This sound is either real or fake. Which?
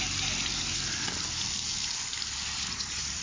real